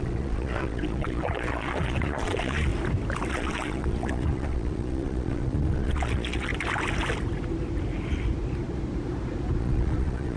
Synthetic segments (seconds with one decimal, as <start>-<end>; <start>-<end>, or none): 0.0-2.7; 3.3-6.5; 9.6-10.4